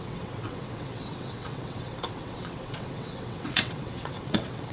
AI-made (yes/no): yes